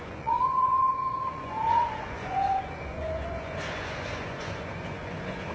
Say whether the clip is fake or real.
fake